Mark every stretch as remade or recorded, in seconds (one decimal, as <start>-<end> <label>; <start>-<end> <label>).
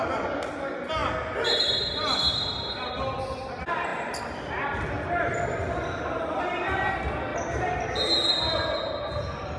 0.0-9.6 recorded